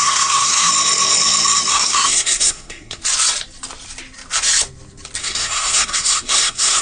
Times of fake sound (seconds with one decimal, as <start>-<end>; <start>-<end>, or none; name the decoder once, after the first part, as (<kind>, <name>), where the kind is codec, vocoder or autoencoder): 0.0-0.7 (codec, SNAC); 1.7-3.0; 5.2-6.8